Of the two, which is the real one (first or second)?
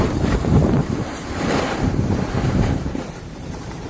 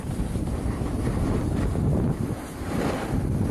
second